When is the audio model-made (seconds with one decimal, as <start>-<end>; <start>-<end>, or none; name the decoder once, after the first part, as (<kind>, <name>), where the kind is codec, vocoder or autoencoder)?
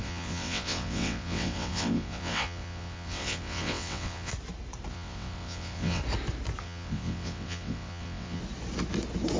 0.0-4.3 (vocoder, WaveNeXt); 4.9-6.0; 6.6-8.4